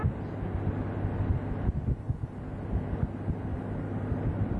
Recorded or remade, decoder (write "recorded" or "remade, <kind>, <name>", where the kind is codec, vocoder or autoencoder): recorded